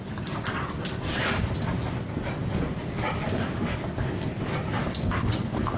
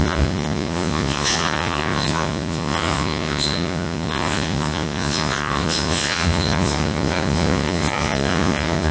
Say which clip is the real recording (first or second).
first